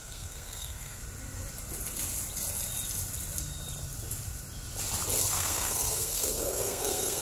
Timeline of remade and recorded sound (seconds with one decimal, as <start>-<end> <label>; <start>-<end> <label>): 0.0-1.0 remade; 1.0-5.3 recorded; 5.3-7.2 remade